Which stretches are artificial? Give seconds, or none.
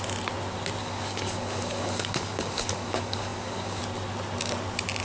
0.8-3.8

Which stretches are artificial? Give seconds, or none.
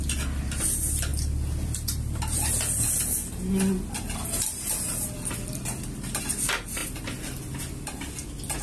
none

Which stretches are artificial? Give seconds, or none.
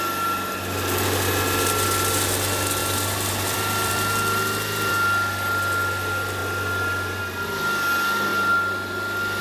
2.8-4.9; 6.4-7.2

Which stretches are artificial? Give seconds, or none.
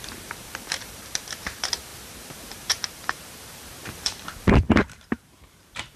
0.0-6.0